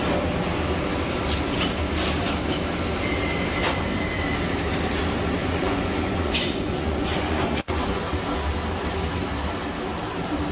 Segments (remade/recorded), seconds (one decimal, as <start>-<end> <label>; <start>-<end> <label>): 0.0-5.4 recorded; 5.4-8.0 remade; 8.0-10.5 recorded